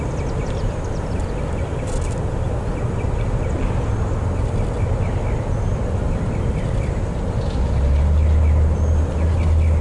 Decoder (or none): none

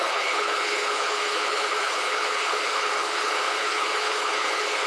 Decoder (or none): codec, HILCodec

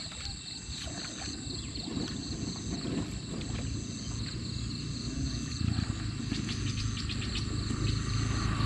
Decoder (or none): none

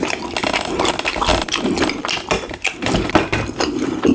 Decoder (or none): none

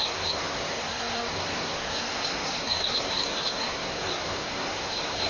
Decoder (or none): codec, SNAC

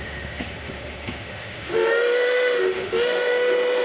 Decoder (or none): autoencoder, DAC-VAE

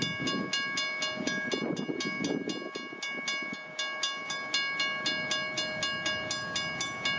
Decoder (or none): none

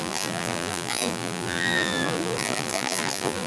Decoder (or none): vocoder, BigVGAN v2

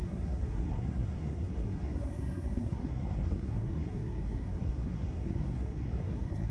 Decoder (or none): codec, SNAC